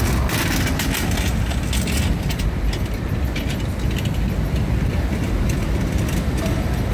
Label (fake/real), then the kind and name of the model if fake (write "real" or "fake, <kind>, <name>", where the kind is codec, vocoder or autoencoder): real